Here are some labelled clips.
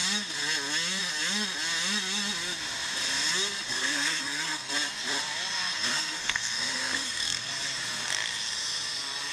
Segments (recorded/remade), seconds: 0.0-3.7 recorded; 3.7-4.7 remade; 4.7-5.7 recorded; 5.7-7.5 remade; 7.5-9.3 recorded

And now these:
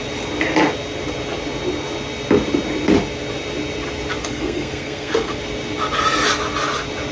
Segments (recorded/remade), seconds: 0.0-4.2 recorded; 4.2-5.4 remade; 5.4-7.1 recorded

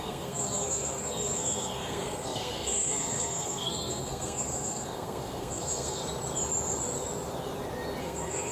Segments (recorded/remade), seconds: 0.0-6.0 remade; 6.0-8.0 recorded; 8.0-8.5 remade

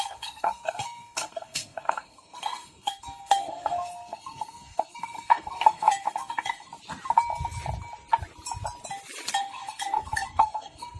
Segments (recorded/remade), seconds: 0.0-6.7 remade; 6.7-9.4 recorded; 9.4-11.0 remade

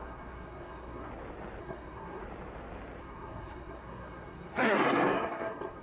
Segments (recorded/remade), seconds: 0.0-1.1 remade; 1.1-1.6 recorded; 1.6-2.2 remade; 2.2-3.0 recorded; 3.0-5.8 remade

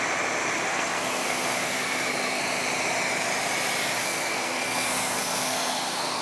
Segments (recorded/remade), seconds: 0.0-0.7 recorded; 0.7-2.4 remade; 2.4-4.0 recorded; 4.0-6.2 remade

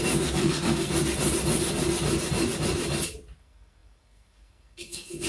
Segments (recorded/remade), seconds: 0.0-0.9 remade; 0.9-3.4 recorded; 3.4-5.3 remade

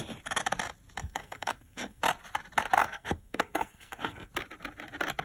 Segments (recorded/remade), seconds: 0.0-1.0 recorded; 1.0-2.0 remade; 2.0-2.8 recorded; 2.8-4.3 remade; 4.3-5.2 recorded